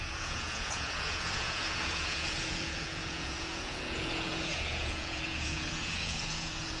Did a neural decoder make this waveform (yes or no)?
yes